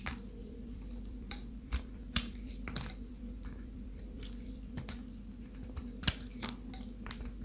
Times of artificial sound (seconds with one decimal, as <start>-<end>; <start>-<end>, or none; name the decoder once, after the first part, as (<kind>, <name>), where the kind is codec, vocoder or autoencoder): 0.4-4.8 (vocoder, BigVGAN v2)